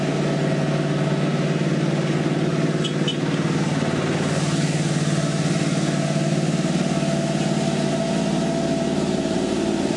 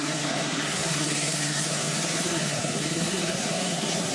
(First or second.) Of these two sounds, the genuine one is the first